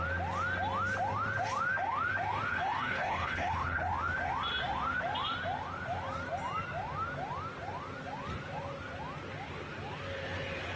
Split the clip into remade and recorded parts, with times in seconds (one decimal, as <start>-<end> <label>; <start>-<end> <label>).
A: 0.0-2.5 recorded; 2.5-3.9 remade; 3.9-10.8 recorded